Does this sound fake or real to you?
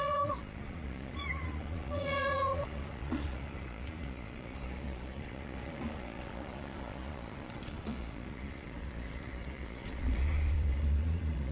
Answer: fake